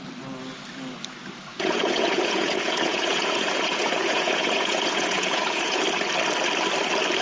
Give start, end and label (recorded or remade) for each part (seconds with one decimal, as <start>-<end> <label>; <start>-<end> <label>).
0.0-1.5 recorded; 1.5-5.8 remade; 5.8-7.2 recorded